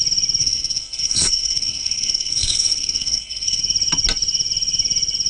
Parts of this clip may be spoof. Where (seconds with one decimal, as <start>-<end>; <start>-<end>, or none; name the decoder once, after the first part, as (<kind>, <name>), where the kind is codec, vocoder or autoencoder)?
0.4-3.6 (codec, SNAC)